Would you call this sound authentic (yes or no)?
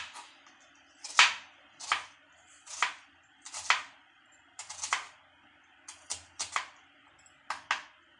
yes